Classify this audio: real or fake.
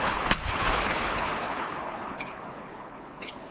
fake